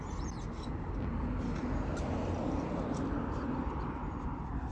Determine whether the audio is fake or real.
real